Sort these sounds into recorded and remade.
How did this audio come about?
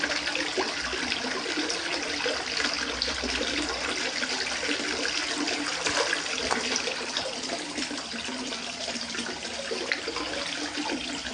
recorded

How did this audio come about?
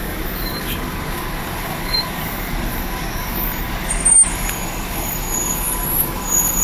remade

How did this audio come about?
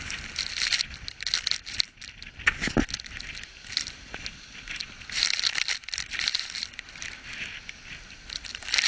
recorded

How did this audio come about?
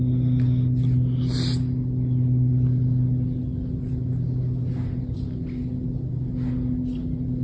recorded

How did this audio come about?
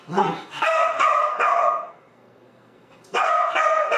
remade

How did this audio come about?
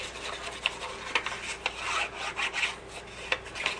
recorded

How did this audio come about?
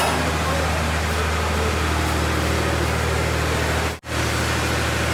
recorded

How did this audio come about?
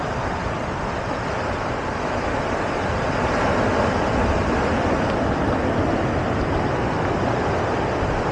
recorded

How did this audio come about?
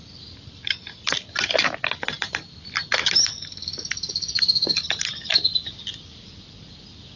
recorded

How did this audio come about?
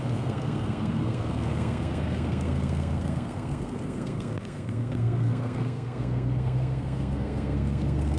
remade